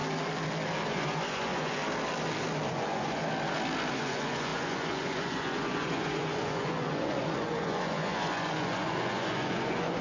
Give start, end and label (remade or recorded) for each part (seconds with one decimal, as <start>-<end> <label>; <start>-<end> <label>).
0.0-0.9 recorded; 0.9-1.8 remade; 1.8-2.7 recorded; 2.7-3.2 remade; 3.2-3.9 recorded; 3.9-10.0 remade